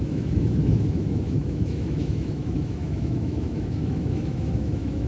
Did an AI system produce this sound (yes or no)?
yes